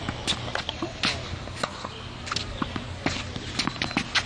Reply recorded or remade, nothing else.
recorded